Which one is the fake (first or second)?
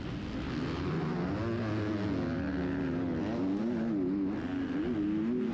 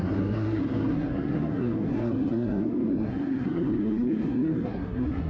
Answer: second